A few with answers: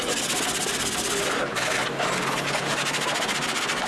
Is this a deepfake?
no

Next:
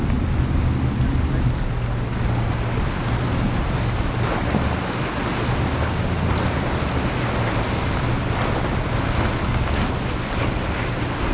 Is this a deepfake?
no